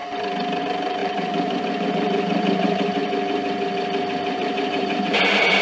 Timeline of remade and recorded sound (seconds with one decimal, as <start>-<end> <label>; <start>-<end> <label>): 0.0-0.6 recorded; 0.6-3.0 remade; 3.0-4.3 recorded; 4.3-5.6 remade